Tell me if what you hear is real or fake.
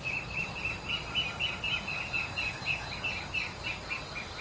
real